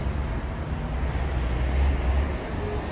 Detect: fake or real real